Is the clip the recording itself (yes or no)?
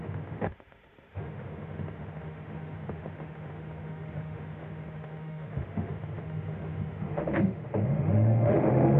no